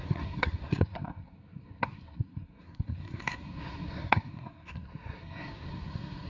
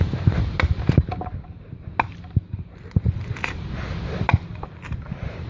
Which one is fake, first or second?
first